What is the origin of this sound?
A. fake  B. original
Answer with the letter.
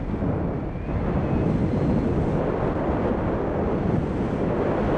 B